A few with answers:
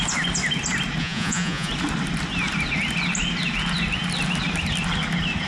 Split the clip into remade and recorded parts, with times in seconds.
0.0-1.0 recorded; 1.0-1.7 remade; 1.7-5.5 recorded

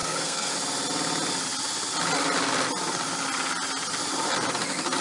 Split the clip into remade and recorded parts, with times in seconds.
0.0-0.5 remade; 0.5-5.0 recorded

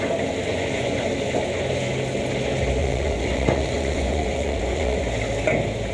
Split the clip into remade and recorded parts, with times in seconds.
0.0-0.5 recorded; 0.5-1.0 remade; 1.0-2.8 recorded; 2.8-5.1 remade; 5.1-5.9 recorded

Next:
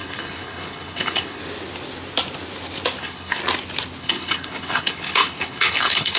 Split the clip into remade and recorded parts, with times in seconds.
0.0-1.4 remade; 1.4-3.0 recorded; 3.0-3.4 remade; 3.4-4.0 recorded; 4.0-6.2 remade

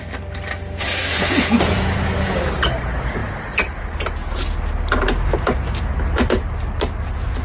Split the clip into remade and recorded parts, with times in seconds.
0.0-1.1 recorded; 1.1-2.5 remade; 2.5-7.4 recorded